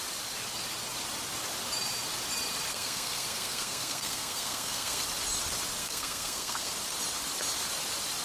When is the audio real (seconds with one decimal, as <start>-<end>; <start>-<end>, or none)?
0.0-2.7; 5.0-5.8; 6.7-8.2